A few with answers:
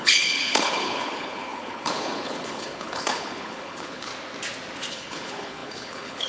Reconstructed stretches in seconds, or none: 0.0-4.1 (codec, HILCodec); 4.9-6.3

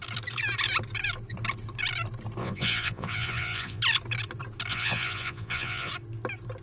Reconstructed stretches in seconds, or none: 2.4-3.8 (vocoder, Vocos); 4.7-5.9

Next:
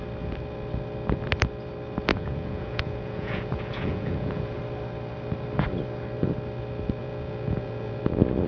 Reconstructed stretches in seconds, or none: 2.1-4.6 (vocoder, Vocos); 7.0-8.0

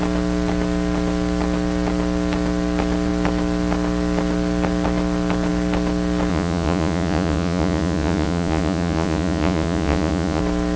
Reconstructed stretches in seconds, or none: 6.3-10.4 (vocoder, Vocos)

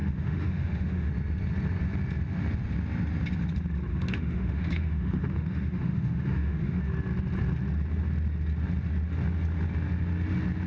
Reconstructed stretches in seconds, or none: 0.0-1.1 (autoencoder, DAC-VAE); 3.9-6.8